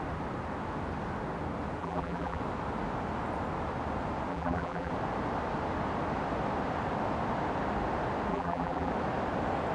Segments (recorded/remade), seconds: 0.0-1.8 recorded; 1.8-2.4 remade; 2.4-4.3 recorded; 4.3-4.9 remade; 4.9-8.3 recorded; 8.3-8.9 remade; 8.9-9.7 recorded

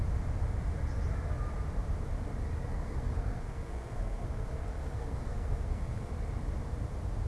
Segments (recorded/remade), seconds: 0.0-2.7 recorded; 2.7-6.1 remade; 6.1-7.3 recorded

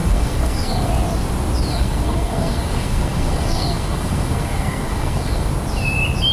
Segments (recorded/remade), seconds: 0.0-0.9 remade; 0.9-1.7 recorded; 1.7-5.5 remade; 5.5-6.3 recorded

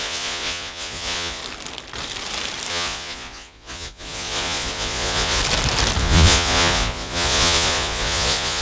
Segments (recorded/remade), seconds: 0.0-1.4 remade; 1.4-2.7 recorded; 2.7-5.4 remade; 5.4-6.0 recorded; 6.0-8.6 remade

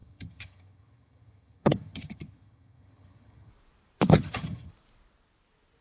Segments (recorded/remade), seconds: 0.0-3.5 remade; 3.5-4.1 recorded; 4.1-4.7 remade; 4.7-5.8 recorded

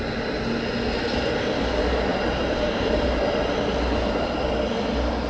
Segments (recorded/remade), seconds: 0.0-2.1 recorded; 2.1-2.9 remade; 2.9-5.3 recorded

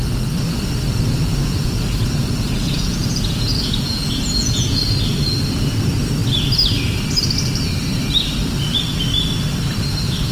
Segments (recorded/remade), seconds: 0.0-1.3 recorded; 1.3-4.8 remade; 4.8-10.3 recorded

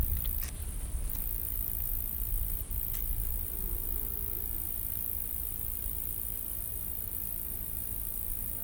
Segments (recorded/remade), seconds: 0.0-8.6 recorded